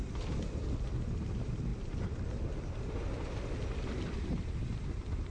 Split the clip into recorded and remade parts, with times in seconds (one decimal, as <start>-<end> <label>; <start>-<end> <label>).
0.0-5.3 recorded